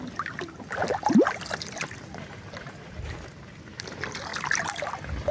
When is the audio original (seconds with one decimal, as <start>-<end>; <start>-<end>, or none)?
0.0-5.3